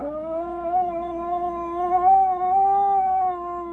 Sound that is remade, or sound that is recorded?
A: remade